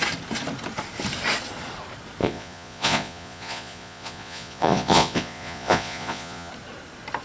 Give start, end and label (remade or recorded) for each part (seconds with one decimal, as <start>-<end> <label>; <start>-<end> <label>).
0.0-2.2 recorded; 2.2-6.5 remade; 6.5-7.2 recorded